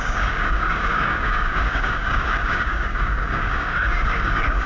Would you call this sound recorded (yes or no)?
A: no